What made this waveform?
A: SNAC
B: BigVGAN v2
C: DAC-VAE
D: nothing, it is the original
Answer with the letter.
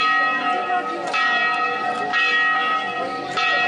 D